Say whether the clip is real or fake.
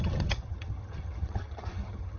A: fake